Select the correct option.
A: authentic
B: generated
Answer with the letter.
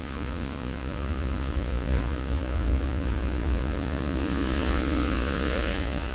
B